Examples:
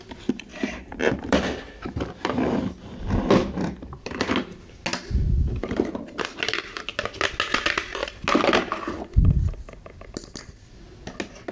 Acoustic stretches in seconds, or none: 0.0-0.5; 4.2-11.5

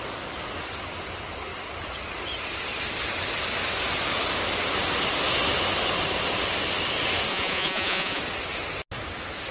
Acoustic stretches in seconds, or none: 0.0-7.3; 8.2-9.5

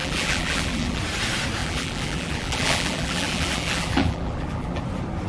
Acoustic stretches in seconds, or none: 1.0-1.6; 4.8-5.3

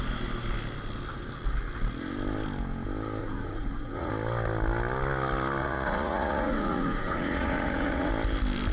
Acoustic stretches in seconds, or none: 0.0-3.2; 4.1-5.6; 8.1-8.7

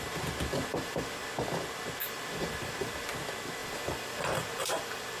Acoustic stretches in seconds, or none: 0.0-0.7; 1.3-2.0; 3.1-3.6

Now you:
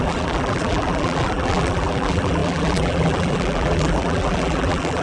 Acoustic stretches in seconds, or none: none

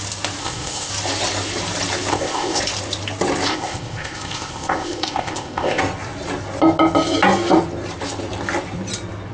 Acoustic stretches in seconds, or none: 0.0-0.4; 0.9-2.1; 2.6-3.5; 5.8-9.3